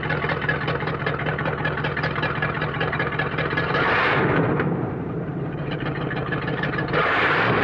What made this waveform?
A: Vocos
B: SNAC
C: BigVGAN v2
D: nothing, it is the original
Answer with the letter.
C